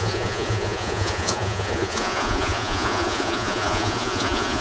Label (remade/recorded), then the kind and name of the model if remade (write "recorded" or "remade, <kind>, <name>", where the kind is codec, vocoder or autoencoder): remade, vocoder, Vocos